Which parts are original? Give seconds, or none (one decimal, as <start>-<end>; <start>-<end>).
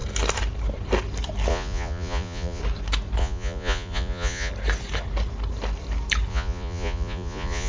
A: 0.0-1.5; 2.6-3.2; 4.5-6.3